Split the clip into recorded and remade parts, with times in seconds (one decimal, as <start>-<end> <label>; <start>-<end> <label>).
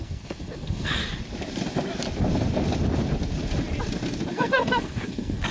0.0-1.0 remade; 1.0-4.3 recorded; 4.3-5.5 remade